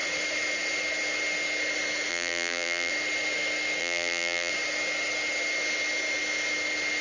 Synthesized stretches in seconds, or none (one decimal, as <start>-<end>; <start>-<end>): 2.1-2.9; 3.8-4.5